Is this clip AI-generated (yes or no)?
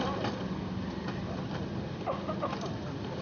no